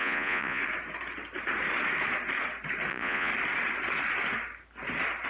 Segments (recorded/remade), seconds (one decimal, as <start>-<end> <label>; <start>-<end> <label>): 0.0-0.6 remade; 0.6-2.9 recorded; 2.9-3.3 remade; 3.3-5.3 recorded